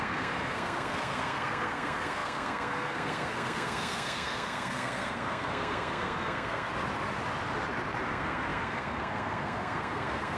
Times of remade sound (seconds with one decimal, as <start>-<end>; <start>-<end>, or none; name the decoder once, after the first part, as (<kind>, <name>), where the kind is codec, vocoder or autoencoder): 0.0-6.7 (codec, SNAC); 8.1-10.4